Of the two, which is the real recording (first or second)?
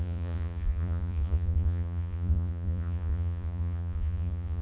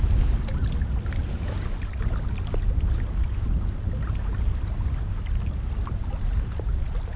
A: second